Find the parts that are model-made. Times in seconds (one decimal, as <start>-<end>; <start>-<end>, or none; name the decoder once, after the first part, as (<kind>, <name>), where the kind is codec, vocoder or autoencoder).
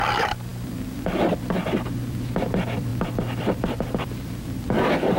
0.0-0.5 (vocoder, BigVGAN v2); 1.5-5.2